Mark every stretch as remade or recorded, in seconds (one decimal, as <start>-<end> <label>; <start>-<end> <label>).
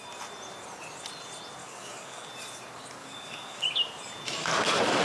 0.0-1.6 recorded; 1.6-2.3 remade; 2.3-3.0 recorded; 3.0-3.6 remade; 3.6-4.4 recorded; 4.4-5.0 remade